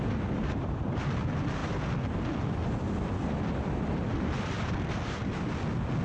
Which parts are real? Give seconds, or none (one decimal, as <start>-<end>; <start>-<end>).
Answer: 0.0-6.0